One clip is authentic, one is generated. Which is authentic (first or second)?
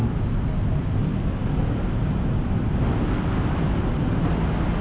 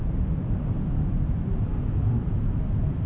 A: first